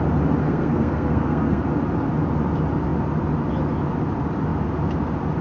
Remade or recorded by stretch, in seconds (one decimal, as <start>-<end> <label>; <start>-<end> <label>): 0.0-0.4 recorded; 0.4-1.6 remade; 1.6-5.4 recorded